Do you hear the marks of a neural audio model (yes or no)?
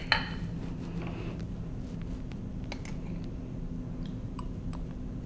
no